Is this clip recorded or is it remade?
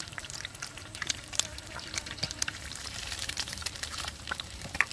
remade